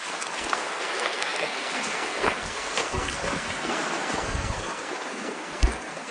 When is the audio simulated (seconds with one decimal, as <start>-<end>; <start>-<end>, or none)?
0.0-6.1